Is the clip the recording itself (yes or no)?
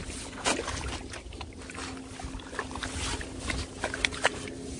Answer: yes